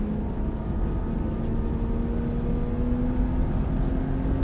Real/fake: real